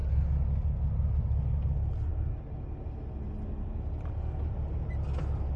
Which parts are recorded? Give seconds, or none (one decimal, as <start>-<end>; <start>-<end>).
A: 0.0-5.6